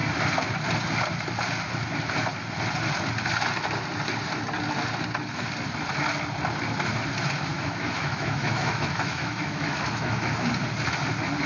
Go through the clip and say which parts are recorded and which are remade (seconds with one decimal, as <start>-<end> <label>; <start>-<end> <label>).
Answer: 0.0-7.5 recorded; 7.5-10.5 remade; 10.5-11.5 recorded